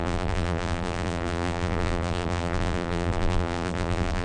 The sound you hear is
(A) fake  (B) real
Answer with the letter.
A